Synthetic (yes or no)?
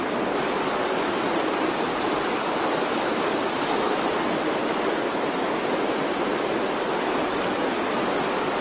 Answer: no